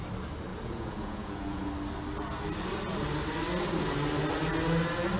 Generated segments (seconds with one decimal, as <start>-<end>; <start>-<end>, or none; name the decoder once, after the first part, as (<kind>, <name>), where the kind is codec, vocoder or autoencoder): 0.5-1.7 (vocoder, Vocos)